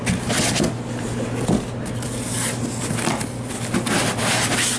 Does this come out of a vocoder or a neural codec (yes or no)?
no